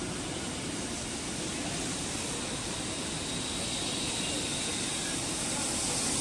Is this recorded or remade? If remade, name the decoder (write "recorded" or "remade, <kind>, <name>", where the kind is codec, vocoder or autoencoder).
recorded